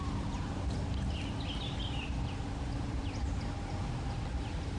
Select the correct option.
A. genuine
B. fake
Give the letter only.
B